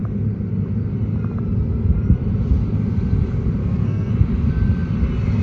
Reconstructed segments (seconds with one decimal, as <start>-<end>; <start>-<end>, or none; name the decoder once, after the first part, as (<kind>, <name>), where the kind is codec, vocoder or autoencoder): 3.6-4.1 (codec, SNAC)